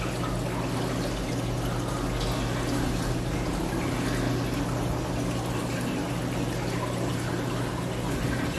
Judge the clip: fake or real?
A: real